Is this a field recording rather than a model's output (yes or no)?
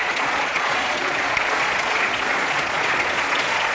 no